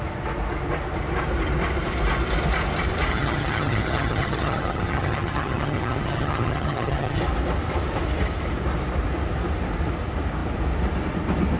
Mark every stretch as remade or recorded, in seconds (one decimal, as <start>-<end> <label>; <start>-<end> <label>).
0.0-3.1 recorded; 3.1-7.2 remade; 7.2-11.6 recorded